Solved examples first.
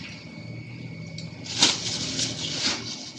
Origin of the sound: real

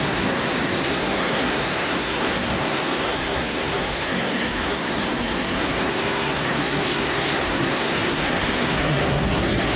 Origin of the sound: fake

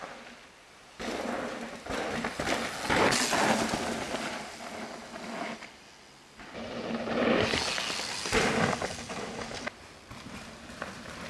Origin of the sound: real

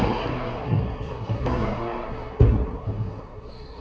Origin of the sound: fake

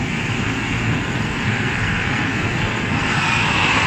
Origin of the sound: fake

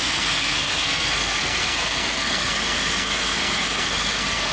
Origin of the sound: fake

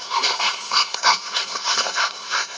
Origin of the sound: fake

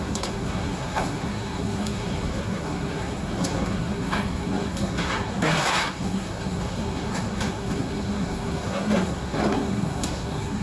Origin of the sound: fake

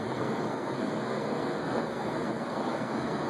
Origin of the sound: fake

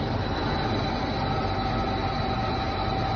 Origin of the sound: real